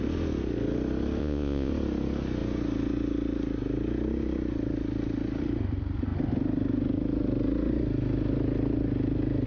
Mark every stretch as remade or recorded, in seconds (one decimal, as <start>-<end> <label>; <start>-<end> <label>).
0.0-1.2 recorded; 1.2-1.7 remade; 1.7-9.5 recorded